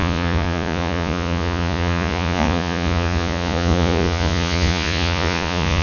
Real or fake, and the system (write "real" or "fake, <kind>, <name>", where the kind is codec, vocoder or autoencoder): fake, vocoder, Vocos